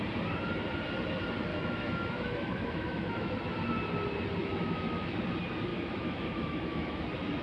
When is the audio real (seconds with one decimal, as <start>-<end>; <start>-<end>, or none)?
0.0-1.5; 3.3-4.4; 5.2-5.7; 7.0-7.4